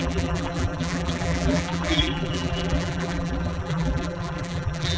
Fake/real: fake